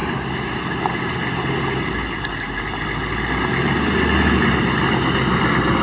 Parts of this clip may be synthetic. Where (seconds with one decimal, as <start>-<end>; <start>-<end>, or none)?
none